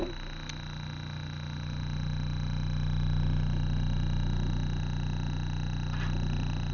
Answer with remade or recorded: recorded